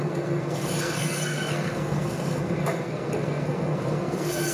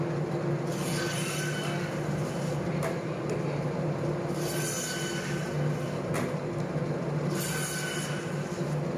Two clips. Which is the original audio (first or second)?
second